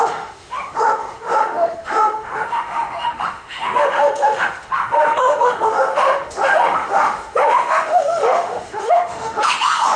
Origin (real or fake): fake